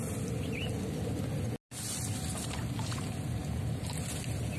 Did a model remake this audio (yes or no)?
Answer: no